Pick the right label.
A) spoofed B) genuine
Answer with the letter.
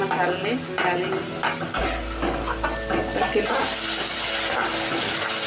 B